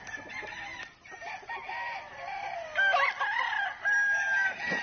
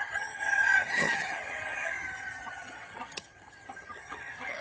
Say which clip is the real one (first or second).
first